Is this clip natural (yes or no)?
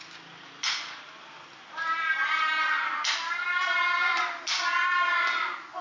yes